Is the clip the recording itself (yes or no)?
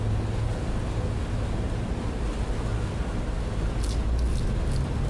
yes